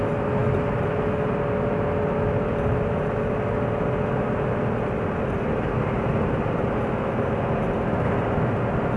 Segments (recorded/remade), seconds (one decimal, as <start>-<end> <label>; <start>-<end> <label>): 0.0-9.0 recorded